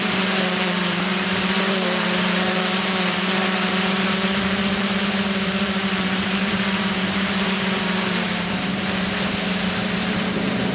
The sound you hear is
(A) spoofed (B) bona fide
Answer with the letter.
A